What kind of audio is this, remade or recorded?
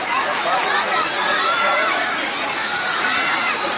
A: remade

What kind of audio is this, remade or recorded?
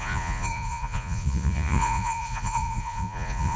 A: remade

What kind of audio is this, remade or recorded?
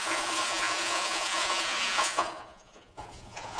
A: remade